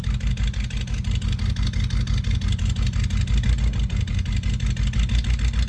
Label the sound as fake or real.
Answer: real